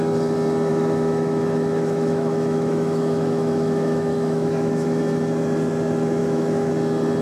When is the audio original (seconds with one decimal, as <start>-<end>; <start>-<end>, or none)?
0.0-0.7; 5.0-6.2; 6.7-7.2